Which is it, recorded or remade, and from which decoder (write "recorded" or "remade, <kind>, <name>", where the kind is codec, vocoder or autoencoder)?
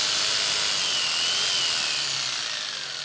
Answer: recorded